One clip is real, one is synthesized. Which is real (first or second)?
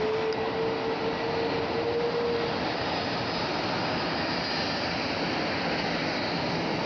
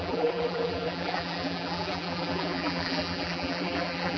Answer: first